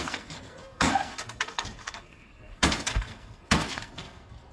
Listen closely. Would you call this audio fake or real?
fake